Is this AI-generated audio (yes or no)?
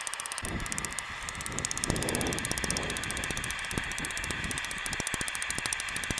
no